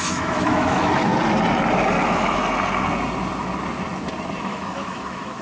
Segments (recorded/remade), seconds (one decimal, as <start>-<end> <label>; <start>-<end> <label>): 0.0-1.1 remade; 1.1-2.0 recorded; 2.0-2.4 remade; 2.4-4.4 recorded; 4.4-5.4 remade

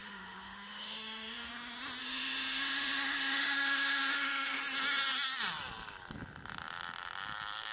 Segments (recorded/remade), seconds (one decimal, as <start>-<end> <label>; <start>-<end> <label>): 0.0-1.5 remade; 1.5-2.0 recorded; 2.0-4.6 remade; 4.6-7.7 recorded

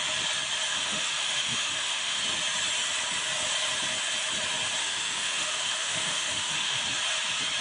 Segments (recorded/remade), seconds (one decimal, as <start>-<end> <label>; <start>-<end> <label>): 0.0-0.7 recorded; 0.7-2.2 remade; 2.2-4.8 recorded; 4.8-6.8 remade; 6.8-7.6 recorded

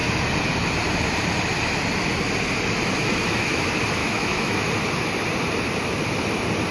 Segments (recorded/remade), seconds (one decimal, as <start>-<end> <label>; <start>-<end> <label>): 0.0-3.0 recorded; 3.0-3.6 remade; 3.6-4.0 recorded; 4.0-4.7 remade; 4.7-6.7 recorded

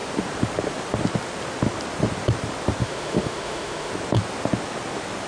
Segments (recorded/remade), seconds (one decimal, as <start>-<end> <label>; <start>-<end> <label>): 0.0-2.8 recorded; 2.8-3.9 remade; 3.9-5.3 recorded

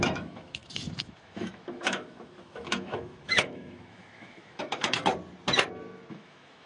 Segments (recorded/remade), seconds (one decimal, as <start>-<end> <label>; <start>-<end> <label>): 0.0-5.1 remade; 5.1-6.1 recorded; 6.1-6.7 remade

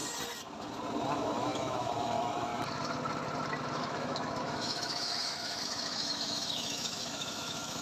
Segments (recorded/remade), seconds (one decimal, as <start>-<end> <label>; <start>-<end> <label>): 0.0-1.1 recorded; 1.1-2.5 remade; 2.5-3.7 recorded; 3.7-7.8 remade